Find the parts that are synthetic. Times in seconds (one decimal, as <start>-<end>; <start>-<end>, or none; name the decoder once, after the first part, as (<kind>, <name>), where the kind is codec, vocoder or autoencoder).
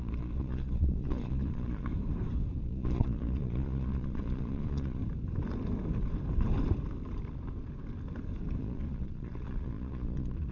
0.0-1.9 (vocoder, Vocos); 2.6-5.0; 8.6-10.5